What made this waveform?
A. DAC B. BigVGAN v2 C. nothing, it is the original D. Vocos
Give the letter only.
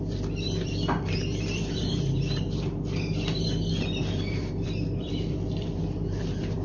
B